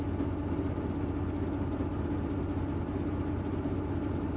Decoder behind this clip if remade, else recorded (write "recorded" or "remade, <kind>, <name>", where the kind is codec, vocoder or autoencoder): recorded